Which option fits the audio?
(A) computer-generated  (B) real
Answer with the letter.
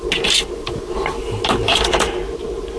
B